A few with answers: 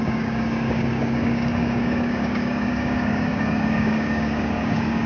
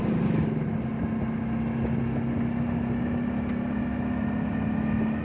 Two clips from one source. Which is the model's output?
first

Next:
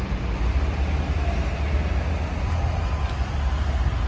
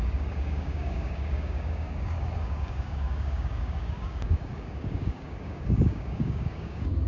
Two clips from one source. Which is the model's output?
second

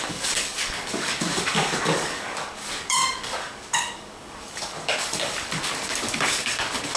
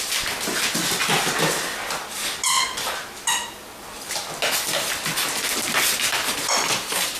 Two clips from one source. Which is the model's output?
first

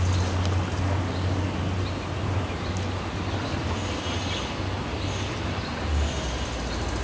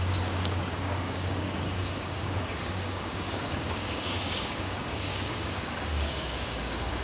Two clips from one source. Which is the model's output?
second